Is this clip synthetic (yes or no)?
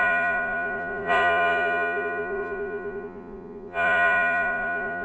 yes